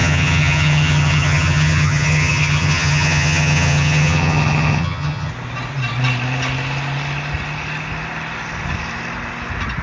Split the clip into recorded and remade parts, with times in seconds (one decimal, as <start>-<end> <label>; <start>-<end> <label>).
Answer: 0.0-5.3 remade; 5.3-9.8 recorded